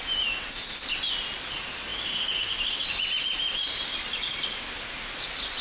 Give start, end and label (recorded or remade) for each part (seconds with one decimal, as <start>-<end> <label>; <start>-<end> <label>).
0.0-5.6 recorded